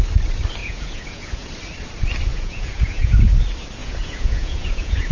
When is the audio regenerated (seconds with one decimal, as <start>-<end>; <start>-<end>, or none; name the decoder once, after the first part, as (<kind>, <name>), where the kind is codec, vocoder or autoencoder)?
0.6-1.5 (vocoder, Vocos); 2.3-3.4; 3.8-5.1